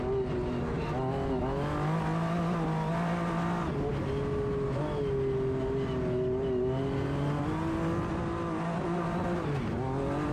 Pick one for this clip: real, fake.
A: real